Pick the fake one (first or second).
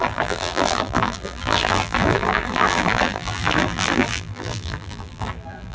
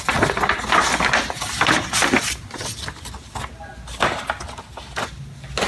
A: first